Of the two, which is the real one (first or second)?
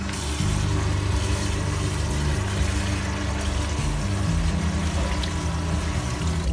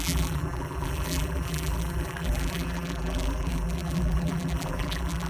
first